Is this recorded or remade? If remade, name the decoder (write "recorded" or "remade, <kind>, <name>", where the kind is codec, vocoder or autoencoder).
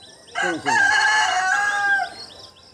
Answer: recorded